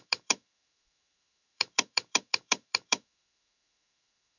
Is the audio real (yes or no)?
no